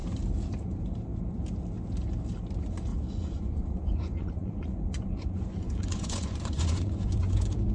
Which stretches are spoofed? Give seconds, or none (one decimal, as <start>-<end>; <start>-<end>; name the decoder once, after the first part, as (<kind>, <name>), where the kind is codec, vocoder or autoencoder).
2.9-7.7 (vocoder, Vocos)